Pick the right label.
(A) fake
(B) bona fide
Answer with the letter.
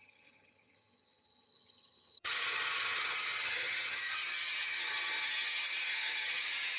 A